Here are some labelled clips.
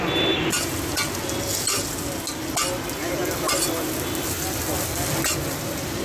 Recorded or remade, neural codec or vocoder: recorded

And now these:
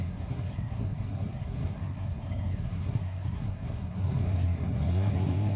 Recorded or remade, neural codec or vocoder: remade, codec, SNAC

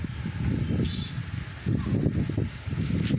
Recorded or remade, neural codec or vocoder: recorded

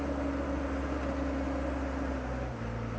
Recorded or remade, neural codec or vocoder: recorded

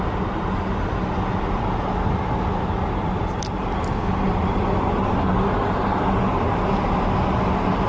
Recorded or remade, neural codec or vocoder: recorded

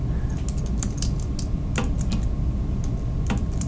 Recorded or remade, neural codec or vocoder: recorded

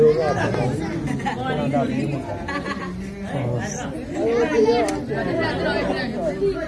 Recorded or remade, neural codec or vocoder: recorded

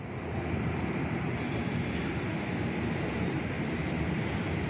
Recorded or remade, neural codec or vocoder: recorded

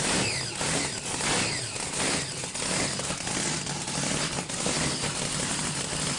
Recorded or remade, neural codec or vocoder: recorded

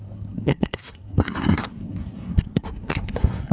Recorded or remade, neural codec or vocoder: remade, codec, SNAC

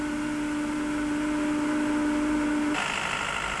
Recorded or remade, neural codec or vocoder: recorded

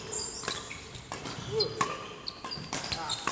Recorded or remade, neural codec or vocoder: recorded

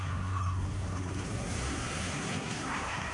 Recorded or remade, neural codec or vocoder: remade, codec, SNAC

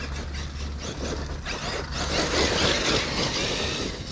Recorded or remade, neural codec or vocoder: recorded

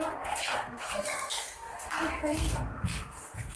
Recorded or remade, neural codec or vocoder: remade, codec, SNAC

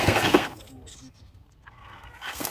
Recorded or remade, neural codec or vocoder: remade, codec, SNAC